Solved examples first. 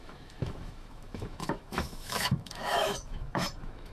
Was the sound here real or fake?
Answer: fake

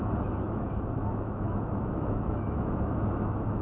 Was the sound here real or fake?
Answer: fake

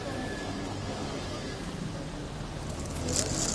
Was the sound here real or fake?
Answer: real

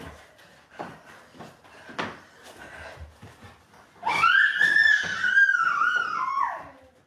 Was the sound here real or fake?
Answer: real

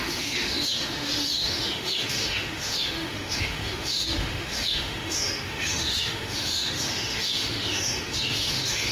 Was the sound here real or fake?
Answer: fake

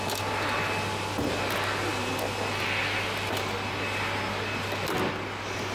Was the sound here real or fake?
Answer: real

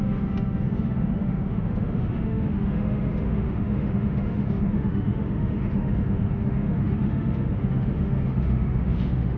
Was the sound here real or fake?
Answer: fake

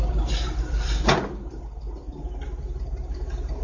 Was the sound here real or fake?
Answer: real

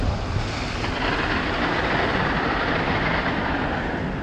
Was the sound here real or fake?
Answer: real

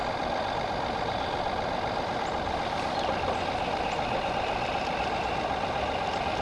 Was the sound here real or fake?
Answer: real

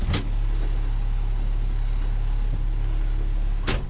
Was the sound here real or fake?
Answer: real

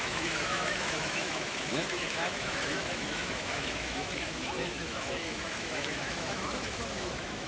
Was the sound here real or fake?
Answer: fake